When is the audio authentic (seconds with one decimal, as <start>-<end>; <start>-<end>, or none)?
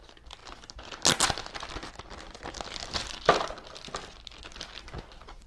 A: 0.0-5.5